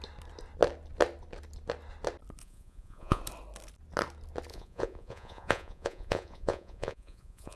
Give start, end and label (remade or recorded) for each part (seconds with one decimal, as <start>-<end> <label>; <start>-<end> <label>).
0.0-2.4 recorded; 2.4-3.2 remade; 3.2-4.5 recorded; 4.5-7.6 remade